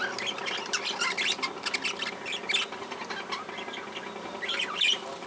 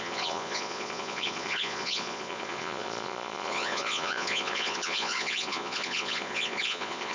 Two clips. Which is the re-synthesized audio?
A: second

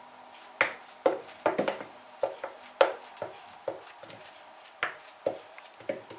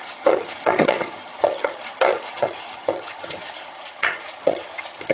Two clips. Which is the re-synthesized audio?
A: second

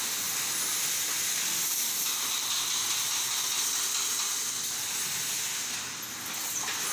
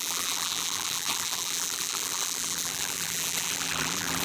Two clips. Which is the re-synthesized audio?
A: second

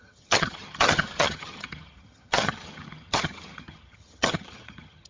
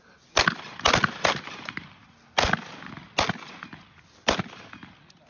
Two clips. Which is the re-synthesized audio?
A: first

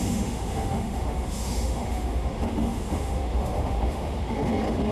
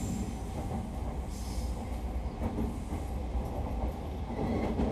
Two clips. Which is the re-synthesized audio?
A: first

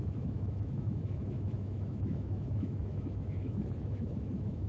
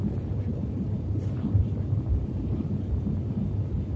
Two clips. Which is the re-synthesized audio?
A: first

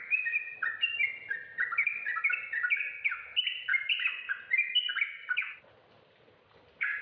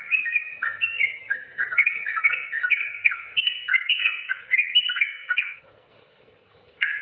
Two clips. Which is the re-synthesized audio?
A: second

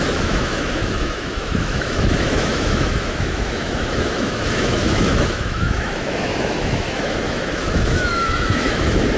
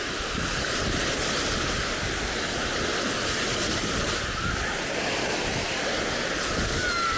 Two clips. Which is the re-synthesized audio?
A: first